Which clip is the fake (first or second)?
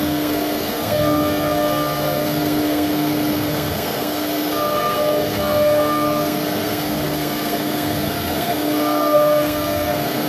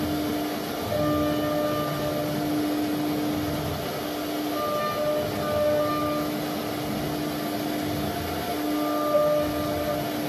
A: first